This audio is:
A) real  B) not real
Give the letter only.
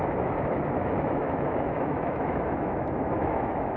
B